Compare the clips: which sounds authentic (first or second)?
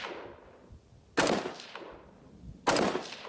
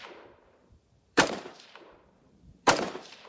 first